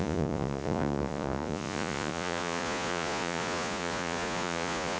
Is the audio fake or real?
fake